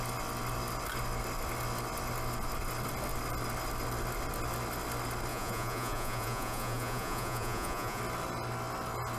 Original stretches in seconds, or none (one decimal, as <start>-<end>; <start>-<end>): 0.0-5.3; 8.0-9.2